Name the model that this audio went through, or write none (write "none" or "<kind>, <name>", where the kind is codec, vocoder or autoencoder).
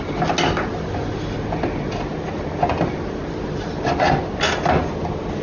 none